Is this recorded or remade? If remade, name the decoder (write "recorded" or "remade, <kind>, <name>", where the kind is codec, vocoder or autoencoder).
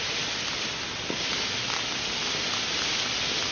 recorded